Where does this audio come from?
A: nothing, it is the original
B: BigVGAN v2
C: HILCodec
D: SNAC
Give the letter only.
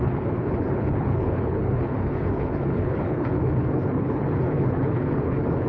C